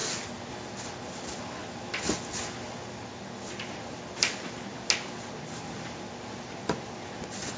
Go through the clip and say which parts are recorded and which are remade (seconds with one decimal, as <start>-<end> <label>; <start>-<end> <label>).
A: 0.0-7.6 recorded